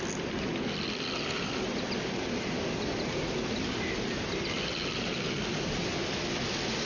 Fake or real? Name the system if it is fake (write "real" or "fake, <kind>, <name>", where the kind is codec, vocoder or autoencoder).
real